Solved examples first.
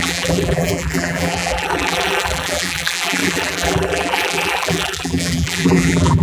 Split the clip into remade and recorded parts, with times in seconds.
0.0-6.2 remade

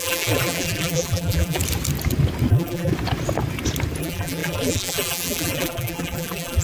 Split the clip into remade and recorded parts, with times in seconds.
0.0-1.6 remade; 1.6-2.5 recorded; 2.5-2.9 remade; 2.9-4.0 recorded; 4.0-6.6 remade

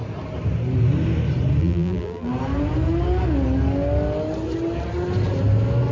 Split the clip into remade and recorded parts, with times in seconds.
0.0-1.6 recorded; 1.6-2.3 remade; 2.3-5.9 recorded

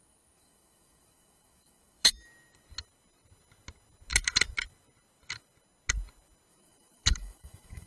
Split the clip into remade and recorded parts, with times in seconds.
0.0-2.1 remade; 2.1-6.5 recorded; 6.5-7.9 remade

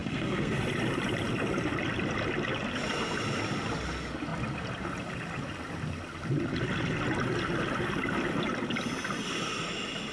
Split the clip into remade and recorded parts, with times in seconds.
0.0-0.6 remade; 0.6-10.1 recorded